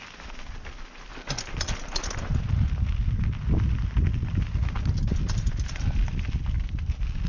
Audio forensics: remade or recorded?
recorded